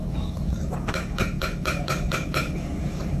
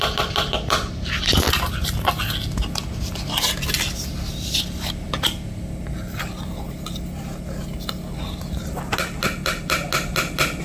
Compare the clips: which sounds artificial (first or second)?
first